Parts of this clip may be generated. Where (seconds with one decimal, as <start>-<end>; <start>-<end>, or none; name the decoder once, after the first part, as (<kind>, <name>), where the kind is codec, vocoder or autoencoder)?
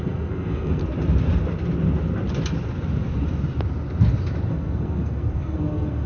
0.0-0.8 (codec, SNAC); 4.5-6.1